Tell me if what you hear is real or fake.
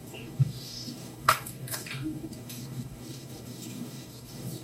fake